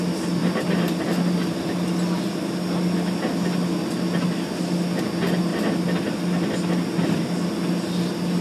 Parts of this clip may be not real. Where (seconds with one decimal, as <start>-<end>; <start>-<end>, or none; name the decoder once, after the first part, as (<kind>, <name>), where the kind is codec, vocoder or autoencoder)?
0.4-1.0 (vocoder, BigVGAN v2)